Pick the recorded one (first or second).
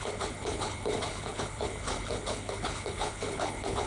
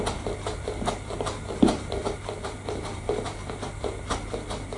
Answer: second